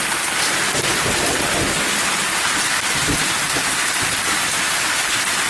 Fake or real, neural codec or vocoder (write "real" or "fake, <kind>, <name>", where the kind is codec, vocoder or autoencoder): real